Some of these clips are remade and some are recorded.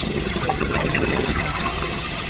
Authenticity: remade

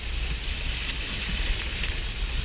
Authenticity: recorded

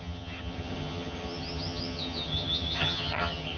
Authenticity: remade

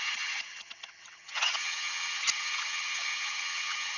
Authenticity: remade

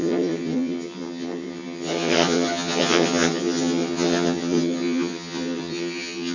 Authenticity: remade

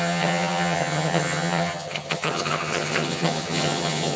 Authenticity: remade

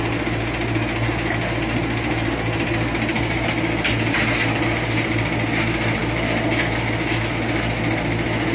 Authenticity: recorded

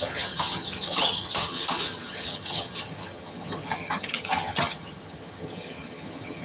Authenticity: remade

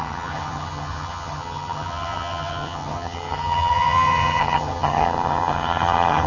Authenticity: remade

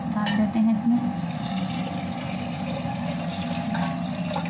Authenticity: recorded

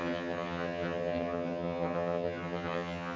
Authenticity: remade